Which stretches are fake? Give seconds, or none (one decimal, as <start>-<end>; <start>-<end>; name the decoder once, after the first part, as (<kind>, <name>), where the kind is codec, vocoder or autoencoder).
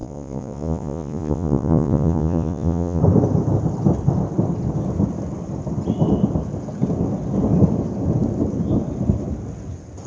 0.0-3.0 (vocoder, Vocos)